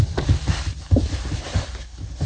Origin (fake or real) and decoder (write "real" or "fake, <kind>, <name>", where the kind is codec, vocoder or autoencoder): real